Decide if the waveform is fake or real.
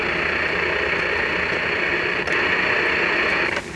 real